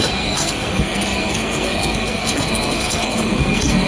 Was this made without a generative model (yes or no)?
no